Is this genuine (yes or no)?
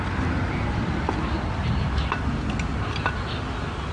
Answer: yes